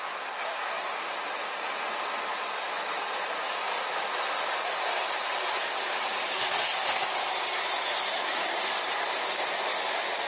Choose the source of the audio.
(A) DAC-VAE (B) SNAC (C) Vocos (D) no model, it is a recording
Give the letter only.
D